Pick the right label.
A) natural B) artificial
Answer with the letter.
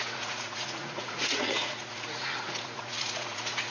B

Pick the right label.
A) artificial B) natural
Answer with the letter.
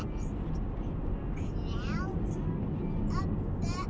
B